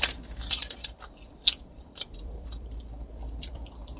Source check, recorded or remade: remade